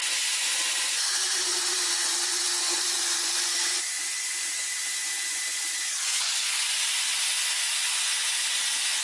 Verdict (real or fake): fake